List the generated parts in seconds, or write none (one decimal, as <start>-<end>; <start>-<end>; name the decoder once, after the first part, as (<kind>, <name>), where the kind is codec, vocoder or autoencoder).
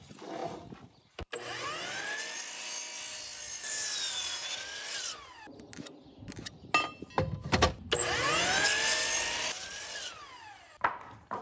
none